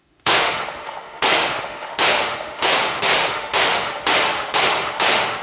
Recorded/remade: remade